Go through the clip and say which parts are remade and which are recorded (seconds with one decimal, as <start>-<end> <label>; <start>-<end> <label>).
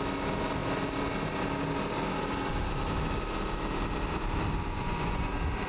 0.0-4.7 recorded; 4.7-5.3 remade; 5.3-5.7 recorded